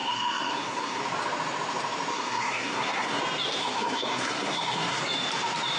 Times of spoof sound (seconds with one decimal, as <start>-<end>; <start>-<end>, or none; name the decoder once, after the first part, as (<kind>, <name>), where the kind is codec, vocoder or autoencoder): 0.0-1.0 (codec, SNAC); 2.1-3.2; 3.6-5.0